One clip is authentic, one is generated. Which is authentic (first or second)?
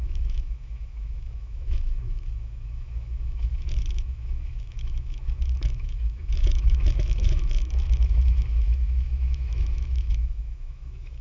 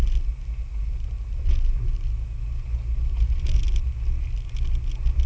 second